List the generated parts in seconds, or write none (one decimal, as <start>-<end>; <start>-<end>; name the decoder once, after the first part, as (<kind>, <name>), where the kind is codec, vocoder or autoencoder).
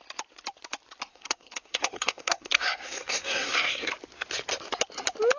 1.1-3.9 (codec, SNAC)